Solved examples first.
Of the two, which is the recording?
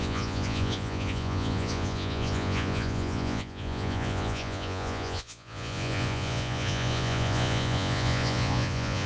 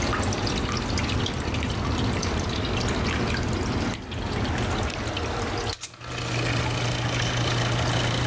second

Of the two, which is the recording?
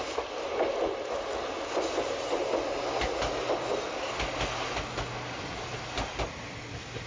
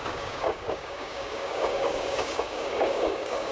first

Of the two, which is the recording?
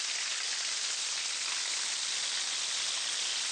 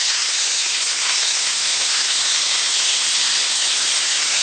first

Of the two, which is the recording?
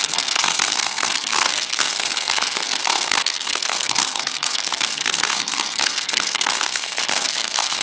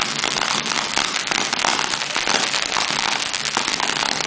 second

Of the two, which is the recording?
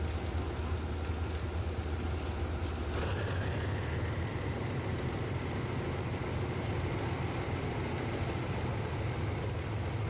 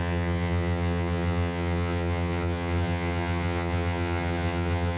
first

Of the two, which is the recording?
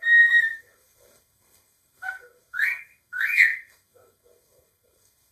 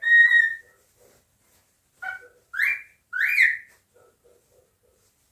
second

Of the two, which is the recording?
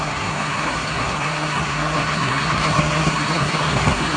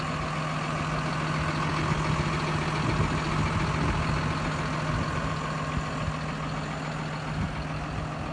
second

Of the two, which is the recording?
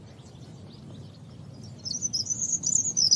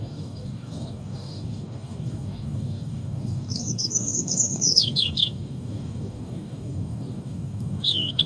first